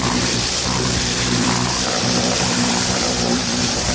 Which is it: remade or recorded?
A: remade